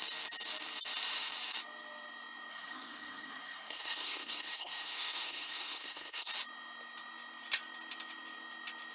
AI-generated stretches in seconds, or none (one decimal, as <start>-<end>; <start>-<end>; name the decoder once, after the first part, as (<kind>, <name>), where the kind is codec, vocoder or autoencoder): 2.5-6.3 (codec, SNAC)